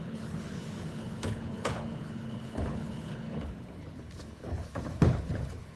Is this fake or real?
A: fake